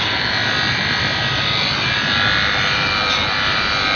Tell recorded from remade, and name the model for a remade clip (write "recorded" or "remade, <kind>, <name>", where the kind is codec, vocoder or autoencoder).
recorded